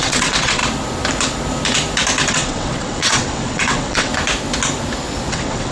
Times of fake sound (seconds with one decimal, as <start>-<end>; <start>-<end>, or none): 0.0-0.6; 2.3-4.1; 5.3-5.7